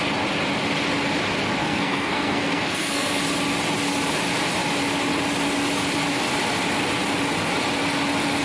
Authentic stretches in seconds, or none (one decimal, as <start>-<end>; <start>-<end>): 0.0-1.6; 3.2-8.4